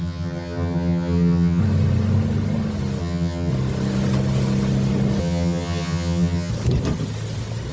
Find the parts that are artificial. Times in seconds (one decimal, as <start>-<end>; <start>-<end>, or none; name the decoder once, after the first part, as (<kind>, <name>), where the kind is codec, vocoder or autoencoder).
0.0-1.6 (vocoder, HiFi-GAN); 3.0-3.5; 5.2-6.5